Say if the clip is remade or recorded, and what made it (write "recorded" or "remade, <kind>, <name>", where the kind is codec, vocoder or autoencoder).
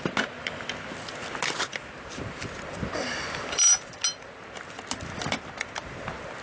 recorded